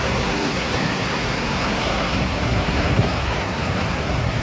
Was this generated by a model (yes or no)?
yes